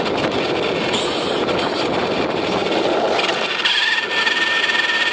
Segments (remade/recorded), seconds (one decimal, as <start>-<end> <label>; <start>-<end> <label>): 0.0-5.1 recorded